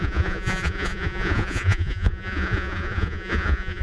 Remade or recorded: remade